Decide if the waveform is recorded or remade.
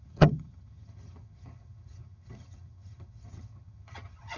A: remade